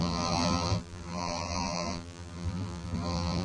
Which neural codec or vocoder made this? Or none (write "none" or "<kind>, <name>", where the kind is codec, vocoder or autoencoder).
vocoder, BigVGAN v2